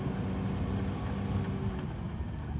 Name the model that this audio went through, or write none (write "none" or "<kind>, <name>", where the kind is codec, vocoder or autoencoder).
none